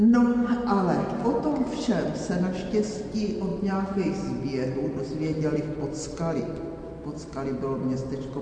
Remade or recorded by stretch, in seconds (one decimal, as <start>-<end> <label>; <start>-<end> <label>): 0.0-3.5 recorded; 3.5-4.1 remade; 4.1-8.4 recorded

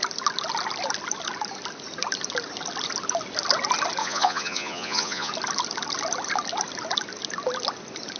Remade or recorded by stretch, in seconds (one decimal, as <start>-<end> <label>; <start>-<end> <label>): 0.0-4.0 recorded; 4.0-5.3 remade; 5.3-8.2 recorded